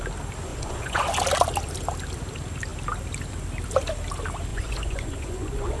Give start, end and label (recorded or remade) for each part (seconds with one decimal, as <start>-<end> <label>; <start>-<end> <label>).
0.0-0.5 recorded; 0.5-1.1 remade; 1.1-4.5 recorded; 4.5-5.8 remade